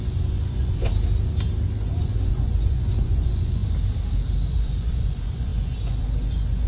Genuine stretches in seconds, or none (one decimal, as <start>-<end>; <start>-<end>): 0.9-1.7; 3.6-4.5